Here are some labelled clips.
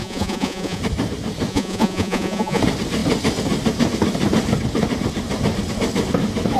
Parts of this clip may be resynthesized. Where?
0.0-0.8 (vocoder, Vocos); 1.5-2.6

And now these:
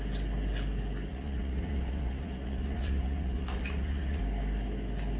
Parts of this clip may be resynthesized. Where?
1.1-4.2 (vocoder, Vocos)

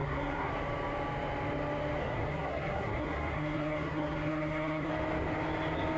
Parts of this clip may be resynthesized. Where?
0.0-0.5 (codec, SNAC); 2.0-4.9

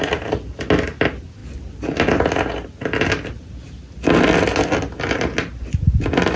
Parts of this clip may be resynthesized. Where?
none

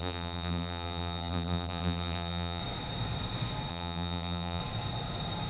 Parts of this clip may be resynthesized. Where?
0.0-2.6 (vocoder, BigVGAN v2); 3.7-4.6

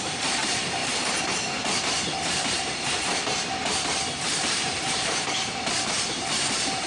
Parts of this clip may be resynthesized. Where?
0.0-6.9 (vocoder, BigVGAN v2)

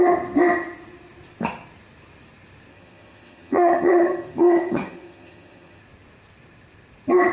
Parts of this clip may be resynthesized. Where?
2.7-5.8 (vocoder, HiFi-GAN)